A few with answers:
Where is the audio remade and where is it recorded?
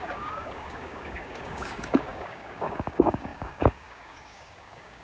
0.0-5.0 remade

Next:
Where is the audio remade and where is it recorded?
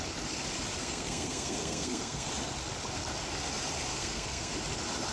0.0-0.8 recorded; 0.8-2.3 remade; 2.3-3.9 recorded; 3.9-4.5 remade; 4.5-5.1 recorded